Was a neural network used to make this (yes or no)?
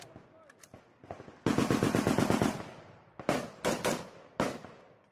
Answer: no